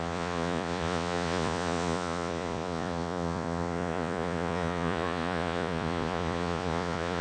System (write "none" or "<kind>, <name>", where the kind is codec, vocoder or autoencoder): vocoder, Vocos